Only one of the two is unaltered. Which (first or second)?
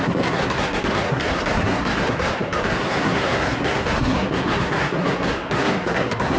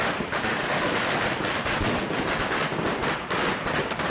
second